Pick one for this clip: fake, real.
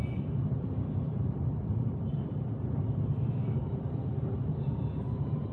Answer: fake